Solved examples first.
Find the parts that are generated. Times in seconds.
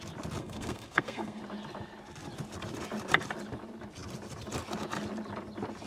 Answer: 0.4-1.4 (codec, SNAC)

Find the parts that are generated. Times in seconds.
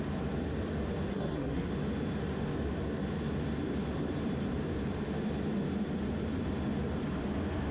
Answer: 1.1-1.7 (codec, SNAC)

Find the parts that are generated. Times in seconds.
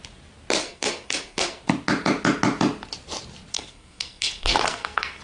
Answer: 0.6-1.6 (codec, SNAC); 3.5-5.2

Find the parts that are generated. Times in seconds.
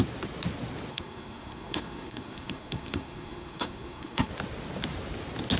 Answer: 0.9-4.3 (codec, SNAC)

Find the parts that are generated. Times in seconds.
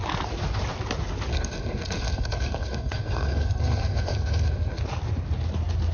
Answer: 1.3-4.8 (codec, SNAC)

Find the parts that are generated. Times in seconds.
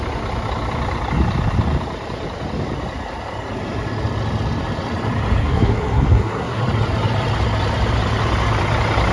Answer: 5.4-6.6 (codec, SNAC)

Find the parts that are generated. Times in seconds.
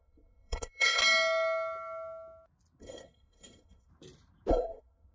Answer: 0.0-1.0 (codec, SNAC); 2.8-3.9; 4.5-5.1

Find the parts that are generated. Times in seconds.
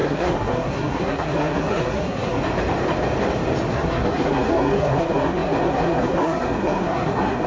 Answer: 0.0-2.4 (codec, SNAC); 3.7-7.5